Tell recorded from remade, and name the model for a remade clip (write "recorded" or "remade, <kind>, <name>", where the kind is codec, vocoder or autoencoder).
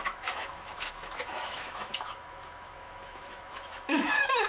remade, autoencoder, DAC-VAE